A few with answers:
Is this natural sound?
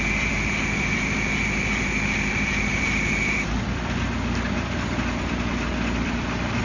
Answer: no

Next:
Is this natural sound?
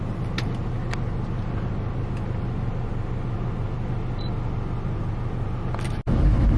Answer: yes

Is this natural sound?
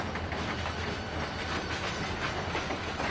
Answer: yes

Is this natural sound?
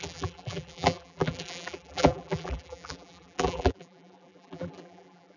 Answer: no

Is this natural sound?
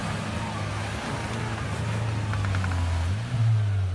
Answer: yes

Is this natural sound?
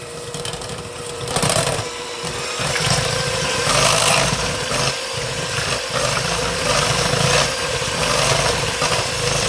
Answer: no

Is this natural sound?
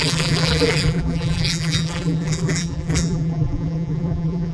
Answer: no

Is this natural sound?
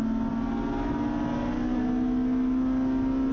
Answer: yes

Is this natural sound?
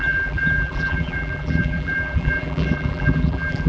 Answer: no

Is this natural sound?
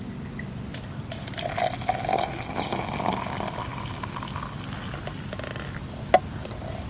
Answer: yes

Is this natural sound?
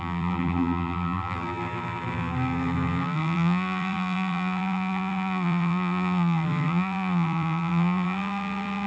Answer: no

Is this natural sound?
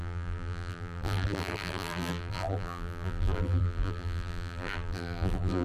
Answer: no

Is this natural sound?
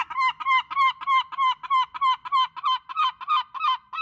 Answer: yes